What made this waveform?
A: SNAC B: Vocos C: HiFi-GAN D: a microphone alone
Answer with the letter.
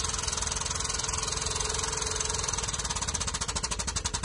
D